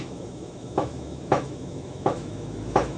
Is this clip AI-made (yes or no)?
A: yes